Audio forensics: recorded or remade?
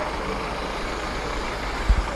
recorded